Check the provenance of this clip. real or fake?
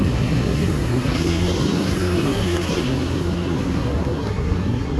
fake